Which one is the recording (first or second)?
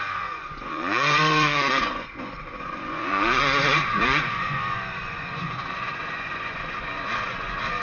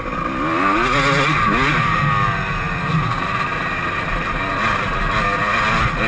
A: second